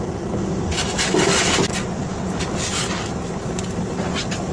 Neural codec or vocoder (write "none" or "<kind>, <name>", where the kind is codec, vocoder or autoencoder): none